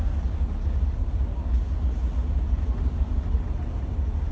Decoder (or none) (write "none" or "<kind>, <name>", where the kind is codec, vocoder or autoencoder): none